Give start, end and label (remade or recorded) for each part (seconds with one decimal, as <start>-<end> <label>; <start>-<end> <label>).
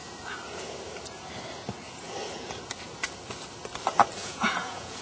0.0-4.2 recorded; 4.2-5.0 remade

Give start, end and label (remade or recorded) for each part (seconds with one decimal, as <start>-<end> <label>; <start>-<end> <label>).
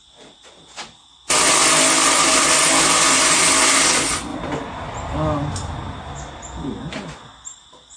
0.0-8.0 recorded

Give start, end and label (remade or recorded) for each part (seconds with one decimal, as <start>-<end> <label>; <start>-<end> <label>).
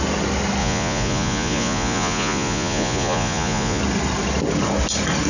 0.0-0.6 recorded; 0.6-3.8 remade; 3.8-5.3 recorded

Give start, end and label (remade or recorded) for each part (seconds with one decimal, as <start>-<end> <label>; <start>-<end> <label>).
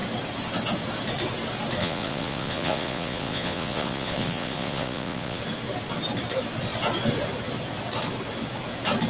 0.0-1.8 recorded; 1.8-5.4 remade; 5.4-9.1 recorded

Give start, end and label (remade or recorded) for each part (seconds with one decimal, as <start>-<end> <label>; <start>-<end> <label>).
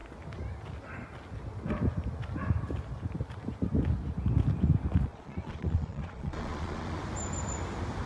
0.0-5.1 recorded; 5.1-7.0 remade; 7.0-8.1 recorded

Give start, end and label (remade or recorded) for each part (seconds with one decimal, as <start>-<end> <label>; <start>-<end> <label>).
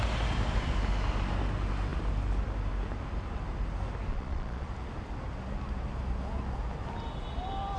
0.0-4.1 recorded; 4.1-4.7 remade; 4.7-7.8 recorded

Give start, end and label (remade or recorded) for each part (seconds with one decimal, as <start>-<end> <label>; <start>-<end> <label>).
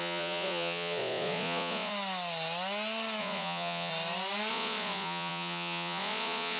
0.0-1.9 remade; 1.9-3.2 recorded; 3.2-3.9 remade; 3.9-4.5 recorded; 4.5-6.6 remade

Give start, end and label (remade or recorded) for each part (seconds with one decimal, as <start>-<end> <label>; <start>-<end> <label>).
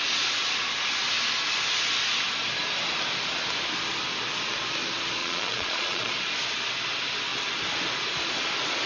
0.0-5.2 recorded; 5.2-6.1 remade; 6.1-8.9 recorded